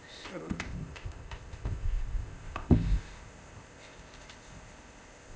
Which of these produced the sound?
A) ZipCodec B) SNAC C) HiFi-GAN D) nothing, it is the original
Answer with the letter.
A